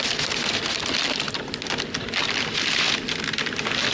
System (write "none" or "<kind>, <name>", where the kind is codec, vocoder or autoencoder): none